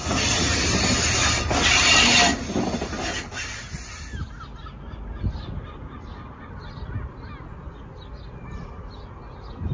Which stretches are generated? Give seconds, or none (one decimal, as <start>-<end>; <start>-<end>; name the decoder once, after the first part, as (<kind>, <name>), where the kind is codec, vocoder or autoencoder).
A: none